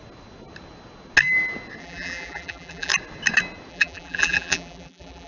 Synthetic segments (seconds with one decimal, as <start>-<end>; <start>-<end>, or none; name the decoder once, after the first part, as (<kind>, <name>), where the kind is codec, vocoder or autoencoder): 1.8-2.9 (vocoder, BigVGAN v2); 3.7-5.3